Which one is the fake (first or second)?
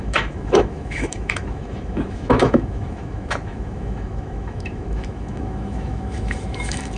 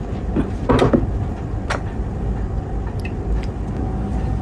first